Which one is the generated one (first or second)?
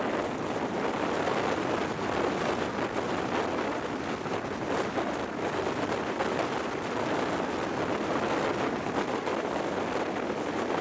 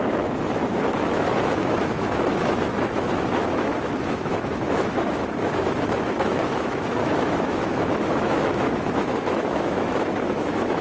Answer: second